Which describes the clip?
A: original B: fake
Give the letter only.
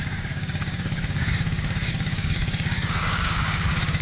B